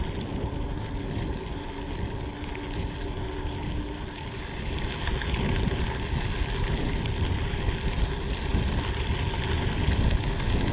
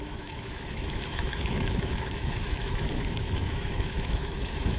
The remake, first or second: second